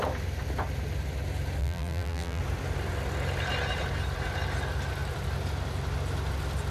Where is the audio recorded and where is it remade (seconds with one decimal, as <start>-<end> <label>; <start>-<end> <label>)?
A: 0.0-1.6 recorded; 1.6-2.4 remade; 2.4-6.7 recorded

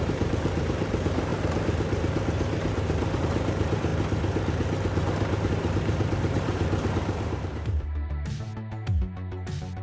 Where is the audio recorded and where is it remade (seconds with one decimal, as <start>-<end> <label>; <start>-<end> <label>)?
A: 0.0-1.3 remade; 1.3-3.2 recorded; 3.2-3.9 remade; 3.9-5.5 recorded; 5.5-8.5 remade; 8.5-9.8 recorded

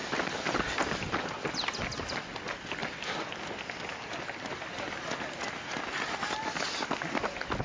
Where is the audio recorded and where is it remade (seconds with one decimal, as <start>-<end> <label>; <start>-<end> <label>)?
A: 0.0-7.6 recorded